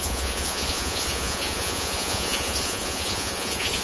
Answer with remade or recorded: remade